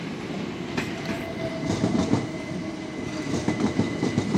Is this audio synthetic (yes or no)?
no